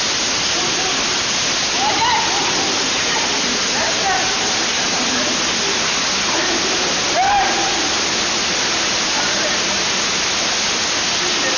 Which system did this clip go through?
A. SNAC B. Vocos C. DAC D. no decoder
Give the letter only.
D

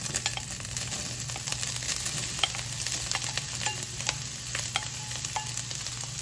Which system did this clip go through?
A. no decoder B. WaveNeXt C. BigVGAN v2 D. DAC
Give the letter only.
A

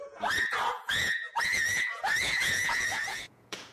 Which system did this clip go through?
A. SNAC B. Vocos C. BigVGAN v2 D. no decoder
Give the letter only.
B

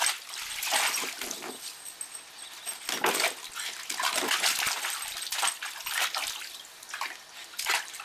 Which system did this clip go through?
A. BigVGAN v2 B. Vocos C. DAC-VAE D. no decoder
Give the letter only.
D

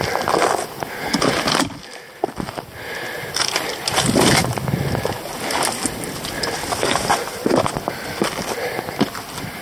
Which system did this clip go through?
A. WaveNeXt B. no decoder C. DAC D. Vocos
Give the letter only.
B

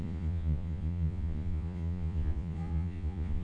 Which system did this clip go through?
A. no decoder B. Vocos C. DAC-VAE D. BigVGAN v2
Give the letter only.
B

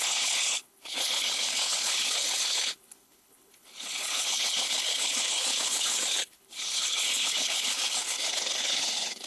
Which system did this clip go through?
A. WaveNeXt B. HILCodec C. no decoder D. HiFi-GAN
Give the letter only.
B